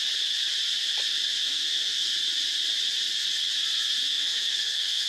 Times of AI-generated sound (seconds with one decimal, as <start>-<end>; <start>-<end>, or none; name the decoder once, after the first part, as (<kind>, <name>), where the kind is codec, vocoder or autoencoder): 1.4-2.1 (codec, SNAC); 4.1-5.1